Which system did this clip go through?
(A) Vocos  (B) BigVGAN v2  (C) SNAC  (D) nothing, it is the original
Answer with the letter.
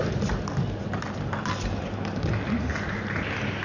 D